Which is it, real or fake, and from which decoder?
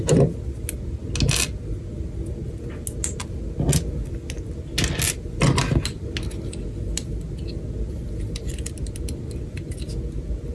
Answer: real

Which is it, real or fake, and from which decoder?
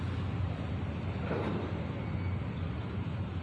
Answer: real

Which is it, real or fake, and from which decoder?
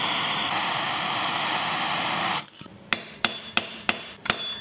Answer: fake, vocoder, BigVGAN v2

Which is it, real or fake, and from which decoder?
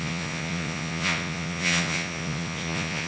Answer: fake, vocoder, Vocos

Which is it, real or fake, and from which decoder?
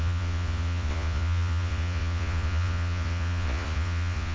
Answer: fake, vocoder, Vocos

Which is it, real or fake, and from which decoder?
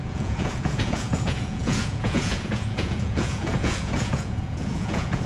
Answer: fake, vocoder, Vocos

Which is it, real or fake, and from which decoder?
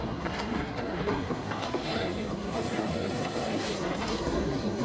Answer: fake, codec, SNAC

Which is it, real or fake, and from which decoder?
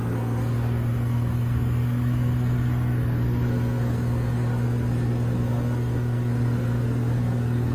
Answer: fake, codec, SNAC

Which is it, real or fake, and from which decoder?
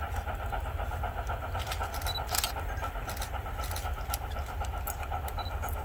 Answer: real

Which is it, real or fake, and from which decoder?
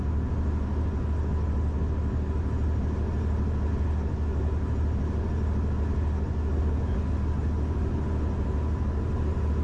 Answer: real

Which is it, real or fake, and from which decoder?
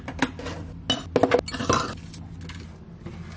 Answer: real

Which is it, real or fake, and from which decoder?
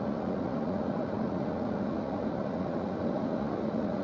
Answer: fake, vocoder, Vocos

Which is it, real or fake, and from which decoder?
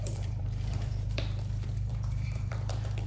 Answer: fake, vocoder, BigVGAN v2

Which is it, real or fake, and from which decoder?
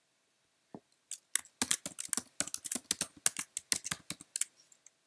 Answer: real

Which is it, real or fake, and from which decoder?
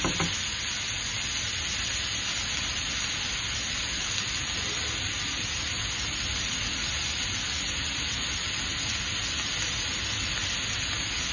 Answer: real